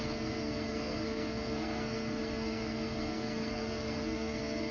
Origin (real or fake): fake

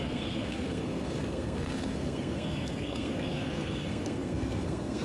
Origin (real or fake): fake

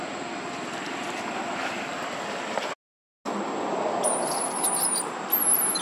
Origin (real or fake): real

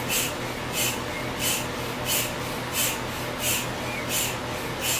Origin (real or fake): real